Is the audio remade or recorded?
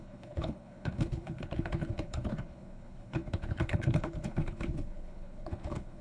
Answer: remade